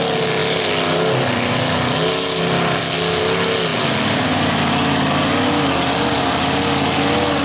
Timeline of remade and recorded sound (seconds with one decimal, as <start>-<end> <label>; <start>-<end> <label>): 0.0-7.4 recorded